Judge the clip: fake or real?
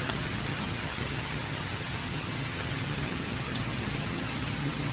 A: fake